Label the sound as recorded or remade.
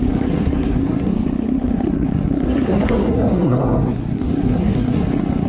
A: remade